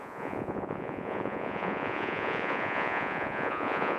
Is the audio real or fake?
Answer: fake